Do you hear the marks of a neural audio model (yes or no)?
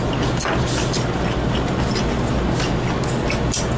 no